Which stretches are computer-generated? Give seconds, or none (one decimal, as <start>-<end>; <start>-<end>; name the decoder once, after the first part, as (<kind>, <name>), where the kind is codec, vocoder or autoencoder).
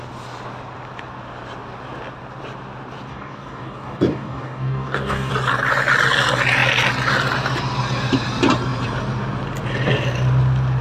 3.1-5.3 (codec, DAC)